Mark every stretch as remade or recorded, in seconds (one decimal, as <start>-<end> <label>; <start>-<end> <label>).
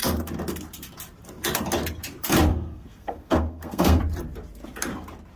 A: 0.0-2.5 recorded; 2.5-4.0 remade; 4.0-5.4 recorded